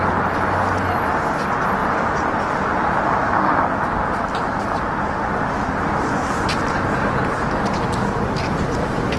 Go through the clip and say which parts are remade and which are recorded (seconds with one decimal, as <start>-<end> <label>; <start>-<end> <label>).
0.0-9.2 recorded